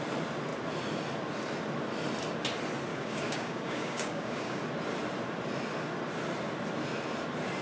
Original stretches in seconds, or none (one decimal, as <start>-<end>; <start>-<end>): 0.0-2.9; 4.6-7.6